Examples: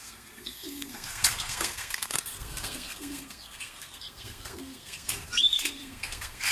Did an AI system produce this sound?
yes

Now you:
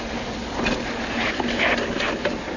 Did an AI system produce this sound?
no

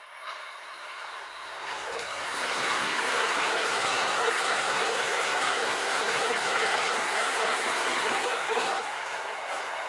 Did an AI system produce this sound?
yes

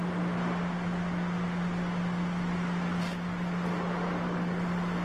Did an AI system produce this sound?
no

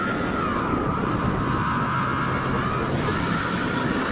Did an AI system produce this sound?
no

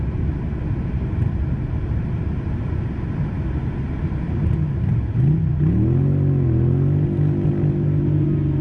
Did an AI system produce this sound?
no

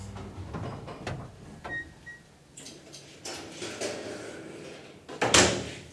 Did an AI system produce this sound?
no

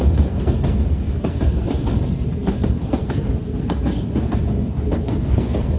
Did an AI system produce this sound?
yes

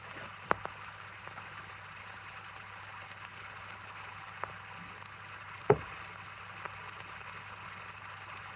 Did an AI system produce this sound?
no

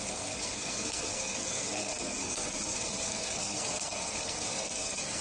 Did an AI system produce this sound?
yes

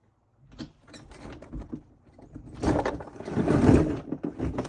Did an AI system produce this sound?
no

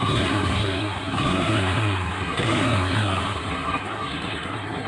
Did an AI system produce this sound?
yes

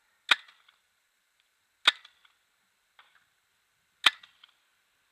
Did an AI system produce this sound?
no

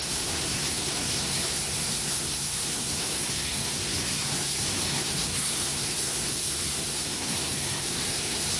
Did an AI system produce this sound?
yes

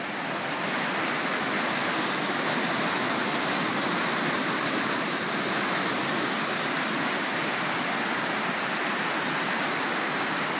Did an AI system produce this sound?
no